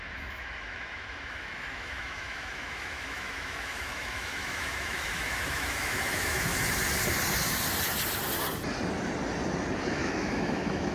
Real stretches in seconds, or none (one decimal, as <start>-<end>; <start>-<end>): 6.5-9.8